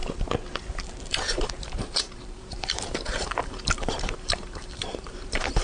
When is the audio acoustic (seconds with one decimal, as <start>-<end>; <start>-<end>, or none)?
0.0-1.1

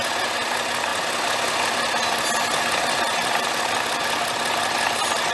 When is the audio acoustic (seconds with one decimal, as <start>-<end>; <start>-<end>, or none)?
0.0-5.3

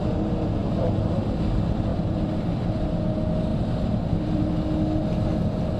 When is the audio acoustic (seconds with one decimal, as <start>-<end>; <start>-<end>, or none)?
0.0-1.9; 3.0-3.5; 4.4-5.8

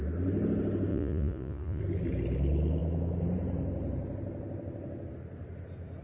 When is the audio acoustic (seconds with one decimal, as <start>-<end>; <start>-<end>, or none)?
0.0-0.9; 1.8-6.0